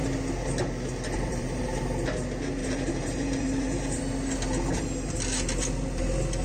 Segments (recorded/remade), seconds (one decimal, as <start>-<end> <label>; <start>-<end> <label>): 0.0-1.3 recorded; 1.3-1.8 remade; 1.8-2.6 recorded; 2.6-4.0 remade; 4.0-6.4 recorded